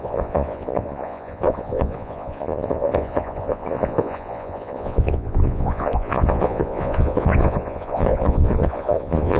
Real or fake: fake